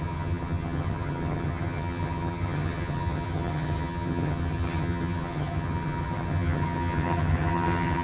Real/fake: fake